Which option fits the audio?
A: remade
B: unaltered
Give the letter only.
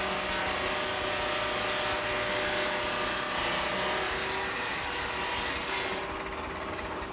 B